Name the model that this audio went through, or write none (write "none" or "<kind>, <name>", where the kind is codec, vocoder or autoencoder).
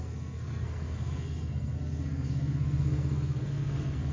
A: codec, SNAC